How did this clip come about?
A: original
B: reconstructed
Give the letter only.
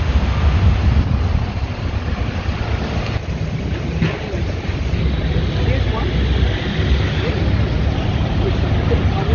A